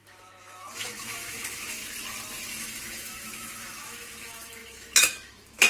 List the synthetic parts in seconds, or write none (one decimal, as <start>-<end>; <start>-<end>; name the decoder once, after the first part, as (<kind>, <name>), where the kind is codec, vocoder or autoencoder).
0.0-1.8 (autoencoder, DAC-VAE); 2.5-5.7